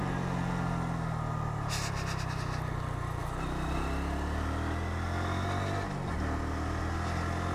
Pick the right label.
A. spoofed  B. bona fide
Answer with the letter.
B